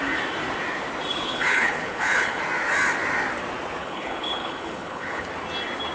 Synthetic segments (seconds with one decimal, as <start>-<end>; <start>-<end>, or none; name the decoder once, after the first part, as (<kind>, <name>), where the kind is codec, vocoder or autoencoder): 1.1-2.4 (codec, HILCodec); 3.8-5.3